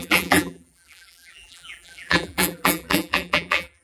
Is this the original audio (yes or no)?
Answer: no